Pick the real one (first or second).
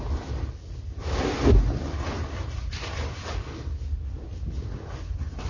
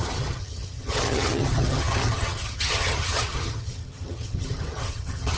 first